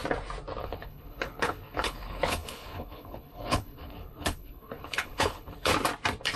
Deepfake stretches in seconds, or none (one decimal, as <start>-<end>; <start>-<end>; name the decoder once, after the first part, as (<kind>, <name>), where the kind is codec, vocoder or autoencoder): 0.6-5.7 (codec, HILCodec)